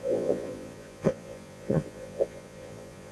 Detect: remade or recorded remade